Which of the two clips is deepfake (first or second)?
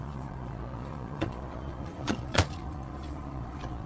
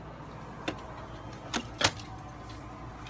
first